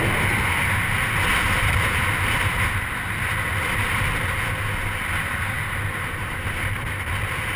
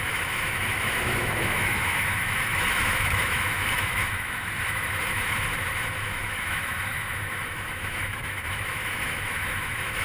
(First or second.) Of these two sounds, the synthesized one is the second